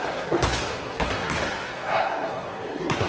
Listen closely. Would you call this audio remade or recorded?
remade